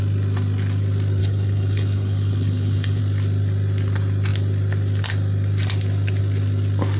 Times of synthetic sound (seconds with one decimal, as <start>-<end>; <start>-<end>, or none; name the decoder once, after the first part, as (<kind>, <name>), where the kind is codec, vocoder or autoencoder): 1.2-3.0 (codec, HILCodec)